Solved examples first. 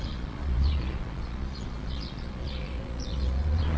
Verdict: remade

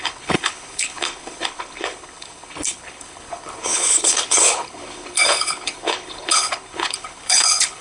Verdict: remade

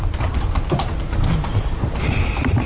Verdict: recorded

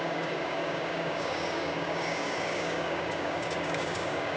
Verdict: remade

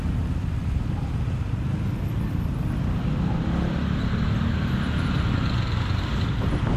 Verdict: recorded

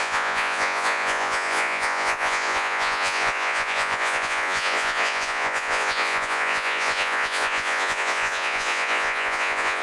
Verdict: remade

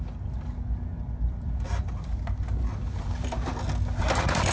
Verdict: recorded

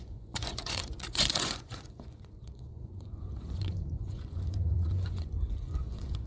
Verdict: remade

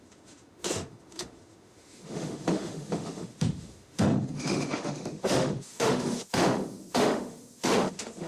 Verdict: remade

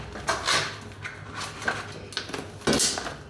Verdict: recorded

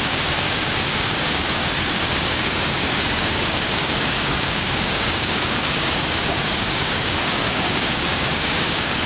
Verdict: remade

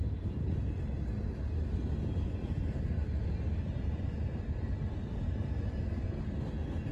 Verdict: recorded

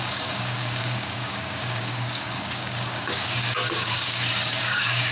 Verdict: remade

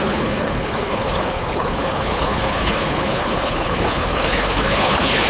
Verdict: remade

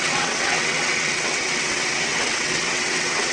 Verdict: remade